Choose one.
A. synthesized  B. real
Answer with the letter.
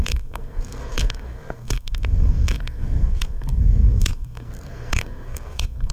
A